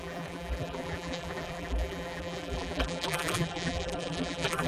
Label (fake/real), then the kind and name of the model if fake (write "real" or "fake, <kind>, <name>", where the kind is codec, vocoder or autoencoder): fake, vocoder, BigVGAN v2